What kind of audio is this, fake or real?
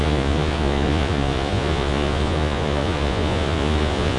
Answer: fake